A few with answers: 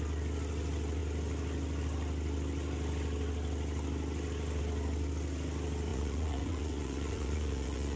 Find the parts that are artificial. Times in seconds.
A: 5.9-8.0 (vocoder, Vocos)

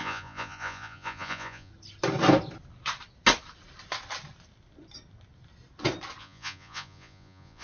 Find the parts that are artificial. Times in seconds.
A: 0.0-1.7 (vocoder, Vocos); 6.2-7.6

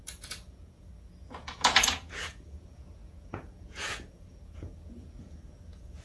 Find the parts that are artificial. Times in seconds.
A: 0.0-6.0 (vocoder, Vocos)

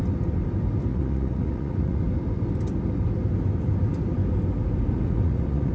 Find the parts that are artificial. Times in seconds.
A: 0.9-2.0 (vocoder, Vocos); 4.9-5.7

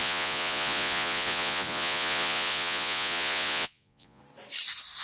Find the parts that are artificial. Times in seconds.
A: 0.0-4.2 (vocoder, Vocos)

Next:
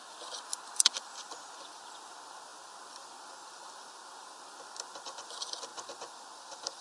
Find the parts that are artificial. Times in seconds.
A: none

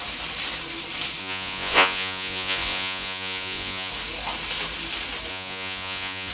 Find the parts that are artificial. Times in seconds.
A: 1.2-3.9 (vocoder, Vocos); 5.3-6.3

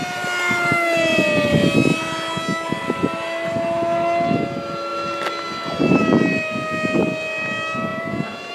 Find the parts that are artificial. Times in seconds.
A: 7.9-8.5 (vocoder, Vocos)